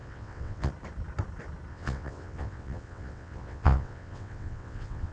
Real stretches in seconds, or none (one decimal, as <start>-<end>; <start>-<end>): 0.7-1.7